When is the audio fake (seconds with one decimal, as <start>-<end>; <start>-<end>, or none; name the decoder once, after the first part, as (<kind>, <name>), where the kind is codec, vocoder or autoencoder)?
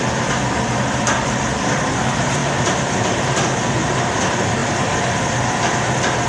2.4-3.6 (vocoder, BigVGAN v2)